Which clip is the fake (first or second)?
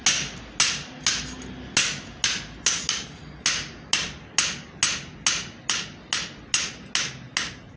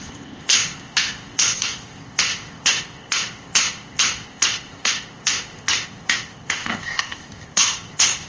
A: second